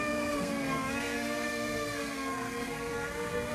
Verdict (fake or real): fake